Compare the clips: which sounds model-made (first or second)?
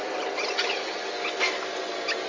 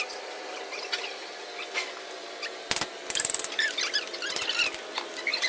second